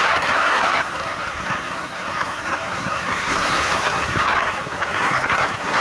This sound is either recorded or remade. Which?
remade